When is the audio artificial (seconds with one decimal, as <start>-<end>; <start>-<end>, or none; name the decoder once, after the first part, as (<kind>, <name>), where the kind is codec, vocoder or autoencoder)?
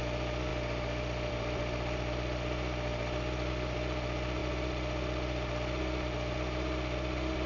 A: none